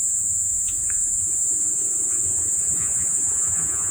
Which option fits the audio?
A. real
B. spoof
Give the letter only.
B